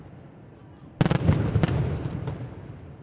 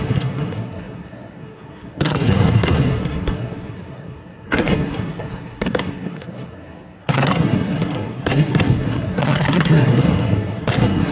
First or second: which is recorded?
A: first